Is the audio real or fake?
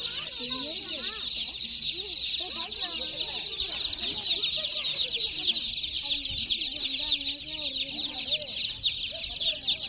real